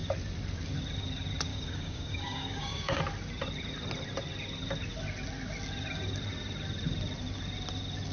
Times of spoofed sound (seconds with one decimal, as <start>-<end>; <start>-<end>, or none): 1.5-3.0